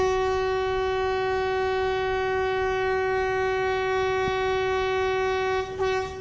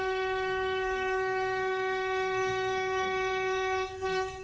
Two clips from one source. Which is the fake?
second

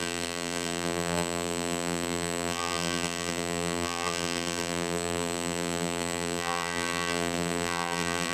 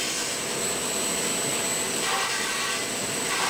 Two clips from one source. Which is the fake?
first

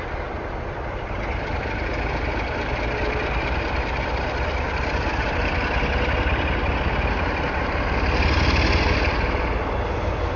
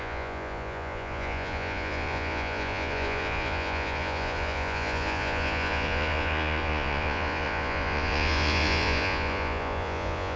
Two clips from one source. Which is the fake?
second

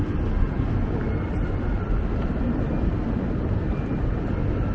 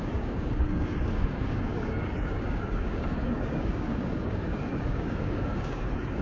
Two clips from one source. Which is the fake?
second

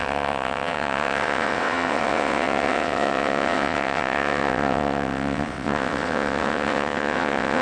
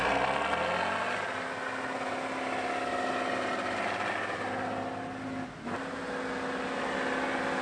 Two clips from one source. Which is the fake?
first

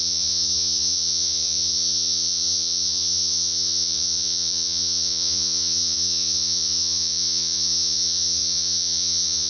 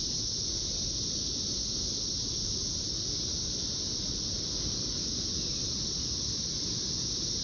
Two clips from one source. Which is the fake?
first